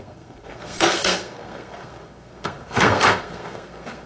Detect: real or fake fake